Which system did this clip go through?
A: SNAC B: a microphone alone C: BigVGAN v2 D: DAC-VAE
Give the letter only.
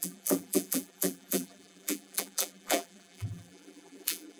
C